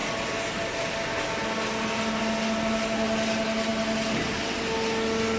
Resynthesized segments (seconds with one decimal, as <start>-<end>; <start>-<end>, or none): none